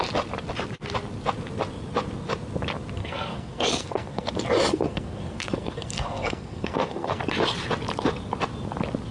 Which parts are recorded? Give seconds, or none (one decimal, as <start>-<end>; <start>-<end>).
0.0-3.0; 4.3-4.7; 7.2-9.1